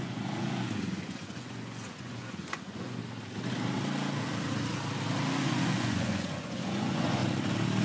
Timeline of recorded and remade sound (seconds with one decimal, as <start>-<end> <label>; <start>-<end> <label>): 0.0-3.0 remade; 3.0-5.4 recorded; 5.4-7.2 remade; 7.2-7.8 recorded